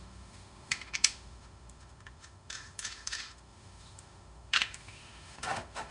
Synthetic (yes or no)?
yes